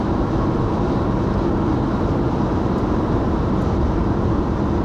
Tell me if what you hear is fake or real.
real